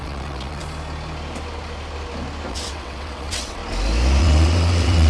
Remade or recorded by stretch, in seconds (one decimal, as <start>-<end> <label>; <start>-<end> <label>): 0.0-0.6 remade; 0.6-2.5 recorded; 2.5-3.6 remade; 3.6-4.2 recorded; 4.2-5.1 remade